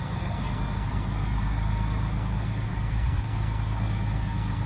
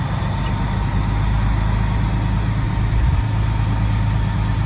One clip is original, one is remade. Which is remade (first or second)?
first